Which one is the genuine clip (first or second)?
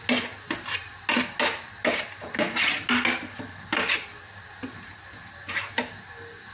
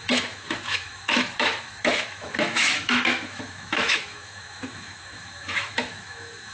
first